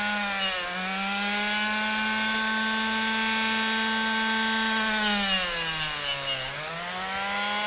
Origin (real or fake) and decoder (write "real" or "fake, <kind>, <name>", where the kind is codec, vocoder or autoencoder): real